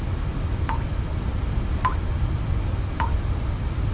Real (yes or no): yes